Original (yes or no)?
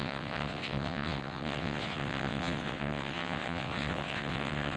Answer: no